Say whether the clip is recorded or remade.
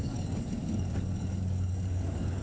remade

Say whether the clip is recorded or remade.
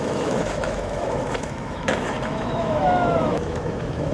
remade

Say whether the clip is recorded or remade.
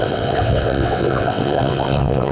remade